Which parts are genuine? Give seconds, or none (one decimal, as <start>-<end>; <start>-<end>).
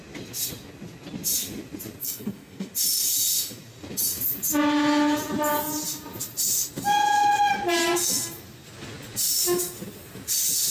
0.0-2.0; 2.7-10.7